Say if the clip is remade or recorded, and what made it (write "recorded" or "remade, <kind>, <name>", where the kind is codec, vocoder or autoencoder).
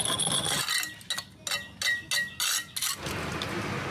recorded